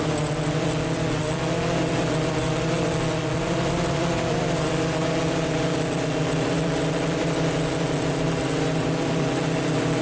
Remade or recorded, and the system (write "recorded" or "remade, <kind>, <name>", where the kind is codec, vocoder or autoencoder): remade, vocoder, BigVGAN v2